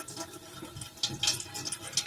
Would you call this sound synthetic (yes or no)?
no